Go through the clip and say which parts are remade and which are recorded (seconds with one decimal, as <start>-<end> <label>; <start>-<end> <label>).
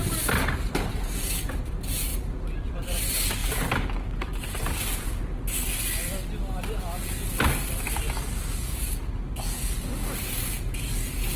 0.0-3.4 recorded; 3.4-5.2 remade; 5.2-11.4 recorded